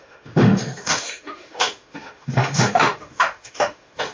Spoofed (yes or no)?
yes